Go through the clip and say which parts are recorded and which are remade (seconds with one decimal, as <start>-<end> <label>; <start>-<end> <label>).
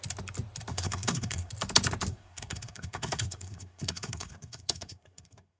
0.0-0.7 recorded; 0.7-1.5 remade; 1.5-2.1 recorded; 2.1-5.6 remade